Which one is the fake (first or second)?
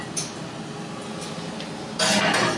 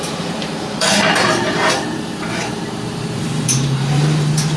second